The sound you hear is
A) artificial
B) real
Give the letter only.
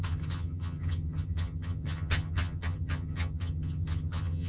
A